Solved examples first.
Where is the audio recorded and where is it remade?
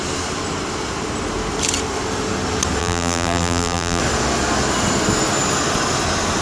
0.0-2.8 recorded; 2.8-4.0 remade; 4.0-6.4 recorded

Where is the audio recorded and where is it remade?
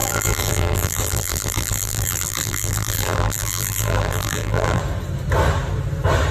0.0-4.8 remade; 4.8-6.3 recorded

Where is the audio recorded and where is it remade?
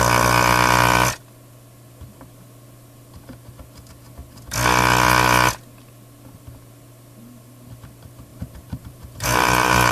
0.0-8.3 recorded; 8.3-9.9 remade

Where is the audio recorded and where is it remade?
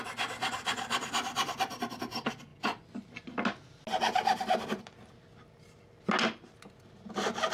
0.0-0.6 recorded; 0.6-1.1 remade; 1.1-7.5 recorded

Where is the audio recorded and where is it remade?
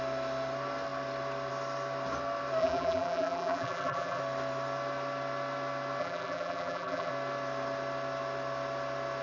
0.0-2.6 recorded; 2.6-4.2 remade; 4.2-6.0 recorded; 6.0-7.1 remade; 7.1-9.2 recorded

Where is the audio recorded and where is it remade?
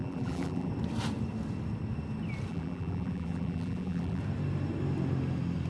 0.0-0.7 remade; 0.7-2.5 recorded; 2.5-4.2 remade; 4.2-5.7 recorded